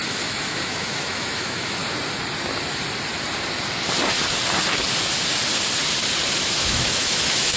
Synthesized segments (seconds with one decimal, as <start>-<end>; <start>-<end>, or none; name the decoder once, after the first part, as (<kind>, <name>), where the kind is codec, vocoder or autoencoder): 0.0-1.8 (autoencoder, DAC-VAE); 6.4-7.6